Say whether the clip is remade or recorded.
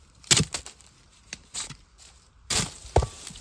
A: recorded